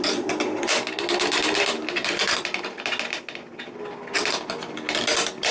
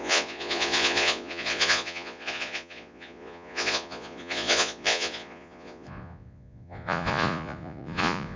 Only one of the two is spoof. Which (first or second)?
second